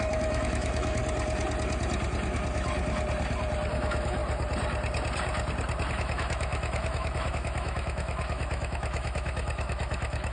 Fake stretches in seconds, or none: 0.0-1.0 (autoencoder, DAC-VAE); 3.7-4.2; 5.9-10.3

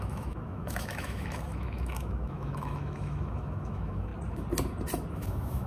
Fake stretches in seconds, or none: 0.0-4.1 (autoencoder, DAC-VAE); 5.1-5.7

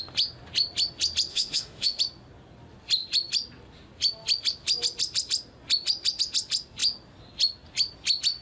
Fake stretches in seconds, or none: 1.3-2.0 (autoencoder, DAC-VAE)

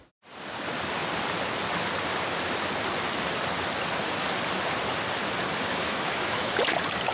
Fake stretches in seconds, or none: 5.7-6.6 (autoencoder, DAC-VAE)

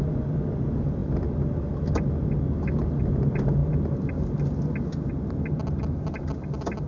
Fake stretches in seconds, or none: none

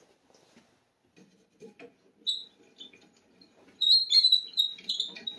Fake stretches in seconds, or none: none

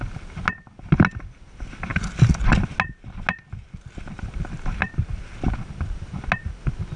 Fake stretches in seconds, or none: none

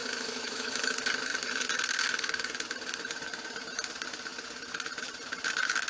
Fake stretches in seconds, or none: 0.0-0.9 (autoencoder, DAC-VAE)